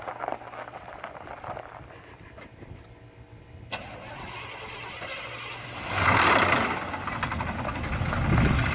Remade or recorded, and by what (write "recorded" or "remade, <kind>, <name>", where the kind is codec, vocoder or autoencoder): recorded